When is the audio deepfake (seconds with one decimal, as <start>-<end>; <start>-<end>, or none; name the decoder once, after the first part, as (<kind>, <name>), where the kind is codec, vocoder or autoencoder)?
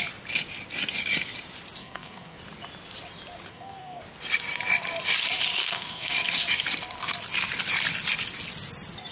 1.8-2.4 (codec, SNAC); 3.5-4.0; 5.6-6.1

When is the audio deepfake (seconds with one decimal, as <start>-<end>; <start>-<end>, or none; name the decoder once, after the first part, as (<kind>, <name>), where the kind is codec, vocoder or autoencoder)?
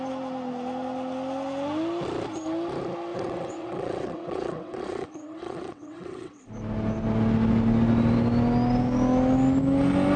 3.1-6.5 (vocoder, WaveNeXt)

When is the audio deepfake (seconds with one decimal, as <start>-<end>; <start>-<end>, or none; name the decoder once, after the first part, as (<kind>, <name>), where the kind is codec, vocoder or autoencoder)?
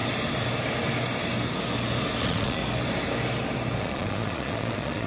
2.2-2.6 (vocoder, Vocos); 3.8-5.1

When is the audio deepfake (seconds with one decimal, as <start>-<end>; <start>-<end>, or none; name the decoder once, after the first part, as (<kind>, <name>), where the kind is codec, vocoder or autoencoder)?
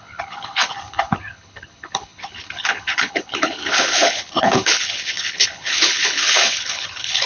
0.0-7.3 (codec, HILCodec)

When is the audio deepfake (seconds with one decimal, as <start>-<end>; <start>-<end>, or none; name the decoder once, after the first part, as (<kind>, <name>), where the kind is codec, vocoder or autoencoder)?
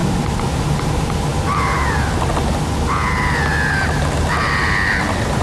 none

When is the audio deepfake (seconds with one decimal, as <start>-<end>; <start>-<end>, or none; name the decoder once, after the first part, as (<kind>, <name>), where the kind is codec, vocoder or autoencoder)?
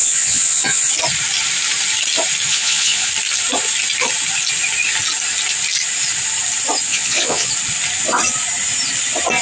0.0-0.9 (vocoder, Vocos); 2.5-3.1; 6.9-7.5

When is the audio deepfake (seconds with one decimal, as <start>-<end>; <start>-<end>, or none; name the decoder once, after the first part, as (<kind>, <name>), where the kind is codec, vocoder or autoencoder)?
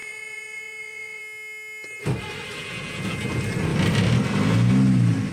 0.0-1.2 (vocoder, Vocos); 2.6-3.2